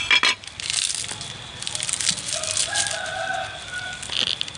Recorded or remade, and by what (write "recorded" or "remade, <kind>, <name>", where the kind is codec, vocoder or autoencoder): recorded